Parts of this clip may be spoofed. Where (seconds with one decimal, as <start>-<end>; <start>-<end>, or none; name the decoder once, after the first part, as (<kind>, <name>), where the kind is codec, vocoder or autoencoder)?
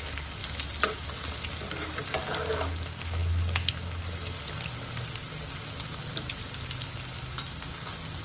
none